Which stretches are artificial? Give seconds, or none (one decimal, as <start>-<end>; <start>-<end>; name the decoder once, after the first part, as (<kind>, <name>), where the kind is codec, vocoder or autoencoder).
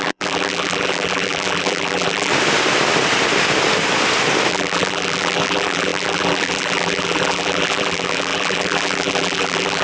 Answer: 0.0-2.3 (vocoder, BigVGAN v2); 4.5-9.8